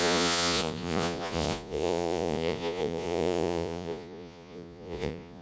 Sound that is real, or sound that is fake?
fake